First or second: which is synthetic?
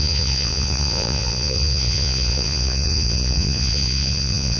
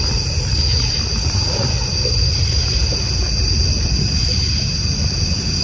first